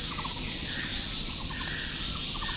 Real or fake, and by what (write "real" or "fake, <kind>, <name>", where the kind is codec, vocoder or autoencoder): real